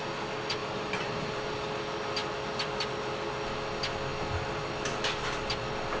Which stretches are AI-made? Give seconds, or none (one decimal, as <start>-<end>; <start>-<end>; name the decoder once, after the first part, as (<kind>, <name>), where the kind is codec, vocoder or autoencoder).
0.6-1.4 (vocoder, BigVGAN v2)